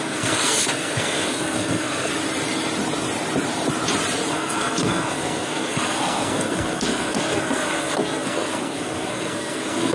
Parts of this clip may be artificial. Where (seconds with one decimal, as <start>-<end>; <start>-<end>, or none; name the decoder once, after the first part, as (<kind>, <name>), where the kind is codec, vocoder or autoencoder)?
0.0-2.1 (codec, SNAC); 4.3-9.9